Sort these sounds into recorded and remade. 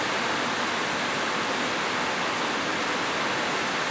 recorded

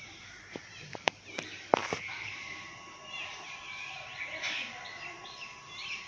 remade